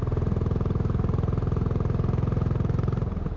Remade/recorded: remade